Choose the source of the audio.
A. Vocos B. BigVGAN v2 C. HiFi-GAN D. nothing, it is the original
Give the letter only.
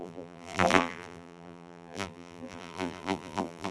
B